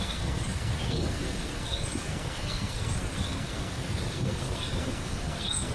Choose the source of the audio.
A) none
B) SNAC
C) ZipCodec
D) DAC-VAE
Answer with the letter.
B